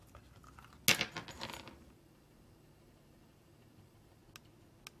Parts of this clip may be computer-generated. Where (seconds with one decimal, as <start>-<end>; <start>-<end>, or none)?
1.3-4.2